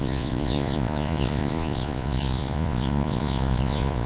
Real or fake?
fake